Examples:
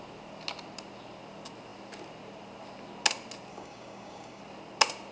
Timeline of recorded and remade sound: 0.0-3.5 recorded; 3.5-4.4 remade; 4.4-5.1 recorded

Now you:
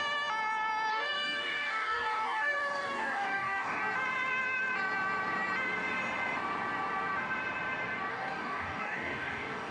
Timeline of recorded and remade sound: 0.0-0.9 recorded; 0.9-3.8 remade; 3.8-8.1 recorded; 8.1-9.7 remade

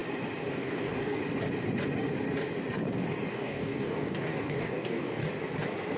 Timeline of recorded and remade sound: 0.0-0.5 recorded; 0.5-1.2 remade; 1.2-3.3 recorded; 3.3-5.2 remade; 5.2-6.0 recorded